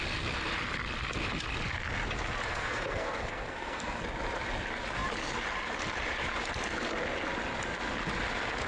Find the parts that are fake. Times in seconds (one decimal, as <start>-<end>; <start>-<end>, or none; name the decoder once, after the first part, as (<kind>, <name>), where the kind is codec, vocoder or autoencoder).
2.5-4.0 (codec, SNAC)